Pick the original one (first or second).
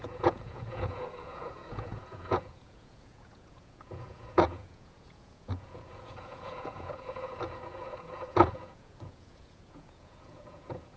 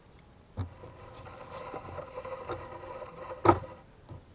second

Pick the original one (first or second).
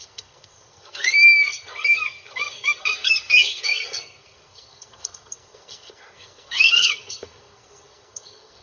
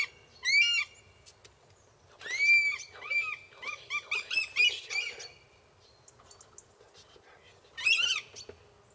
second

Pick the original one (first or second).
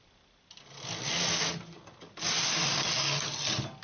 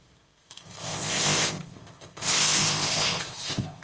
first